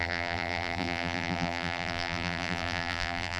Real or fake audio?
fake